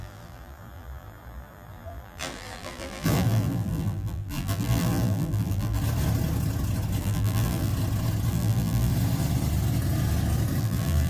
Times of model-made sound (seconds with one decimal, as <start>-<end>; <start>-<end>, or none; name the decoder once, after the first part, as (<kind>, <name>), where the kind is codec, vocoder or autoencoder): 0.0-5.8 (vocoder, BigVGAN v2); 7.0-7.7; 8.3-8.9; 10.6-11.1